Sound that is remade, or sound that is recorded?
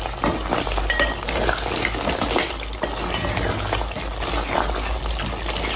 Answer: recorded